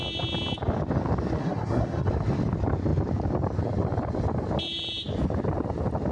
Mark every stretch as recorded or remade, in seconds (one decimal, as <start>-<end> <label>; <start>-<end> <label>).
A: 0.0-1.4 recorded; 1.4-2.1 remade; 2.1-6.1 recorded